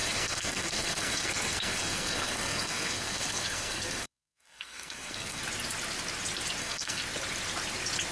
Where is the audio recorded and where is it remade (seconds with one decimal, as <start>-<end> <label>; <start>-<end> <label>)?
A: 0.0-5.4 remade; 5.4-6.6 recorded; 6.6-7.0 remade; 7.0-8.1 recorded